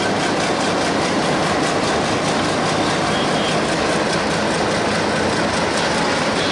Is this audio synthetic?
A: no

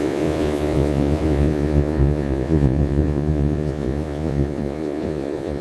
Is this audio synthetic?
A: yes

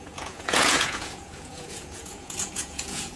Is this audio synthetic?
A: yes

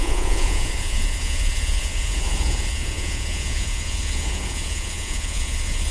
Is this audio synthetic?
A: yes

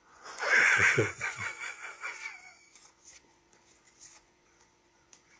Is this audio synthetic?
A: yes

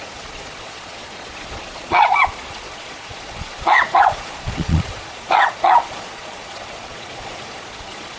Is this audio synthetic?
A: yes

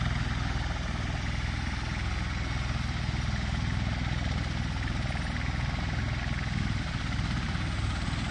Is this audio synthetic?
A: no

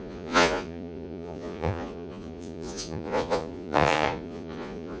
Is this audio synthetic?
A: yes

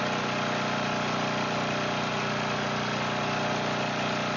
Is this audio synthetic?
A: no